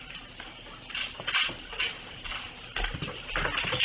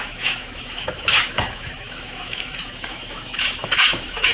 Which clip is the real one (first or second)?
first